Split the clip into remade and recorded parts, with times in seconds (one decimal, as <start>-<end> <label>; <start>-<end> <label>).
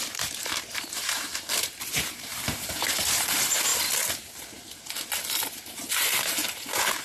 0.0-3.7 remade; 3.7-5.3 recorded; 5.3-7.0 remade